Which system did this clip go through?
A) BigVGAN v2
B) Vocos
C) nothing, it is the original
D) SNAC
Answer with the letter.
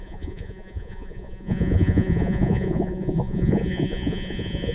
B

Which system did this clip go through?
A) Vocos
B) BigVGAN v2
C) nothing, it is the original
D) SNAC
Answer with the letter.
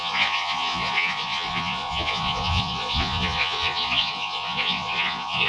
A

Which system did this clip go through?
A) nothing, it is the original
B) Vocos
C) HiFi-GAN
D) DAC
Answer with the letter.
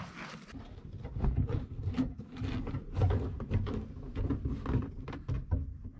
A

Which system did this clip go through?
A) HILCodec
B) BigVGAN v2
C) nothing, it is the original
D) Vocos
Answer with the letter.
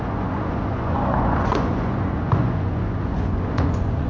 D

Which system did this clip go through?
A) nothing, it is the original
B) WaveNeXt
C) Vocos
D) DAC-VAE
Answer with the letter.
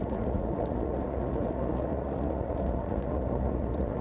C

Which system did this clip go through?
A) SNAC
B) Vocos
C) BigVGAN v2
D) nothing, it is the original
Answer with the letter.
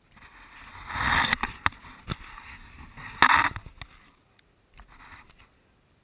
D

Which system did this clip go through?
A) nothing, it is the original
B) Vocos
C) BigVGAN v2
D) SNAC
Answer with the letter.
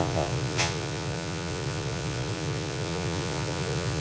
B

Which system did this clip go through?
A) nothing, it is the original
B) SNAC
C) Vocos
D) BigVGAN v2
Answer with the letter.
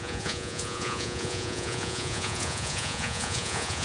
C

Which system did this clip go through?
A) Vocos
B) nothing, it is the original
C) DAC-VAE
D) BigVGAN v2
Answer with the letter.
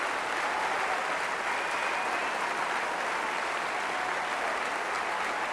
B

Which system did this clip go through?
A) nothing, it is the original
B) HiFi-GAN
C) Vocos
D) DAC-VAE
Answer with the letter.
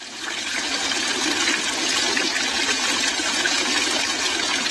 C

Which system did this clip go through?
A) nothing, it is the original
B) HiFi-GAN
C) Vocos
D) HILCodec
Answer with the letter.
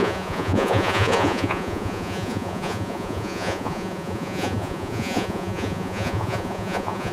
C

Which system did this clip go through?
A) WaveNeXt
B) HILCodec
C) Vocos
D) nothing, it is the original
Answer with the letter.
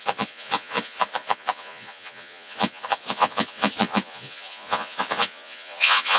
C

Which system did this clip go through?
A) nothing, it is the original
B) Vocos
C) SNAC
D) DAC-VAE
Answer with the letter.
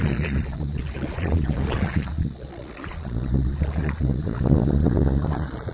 B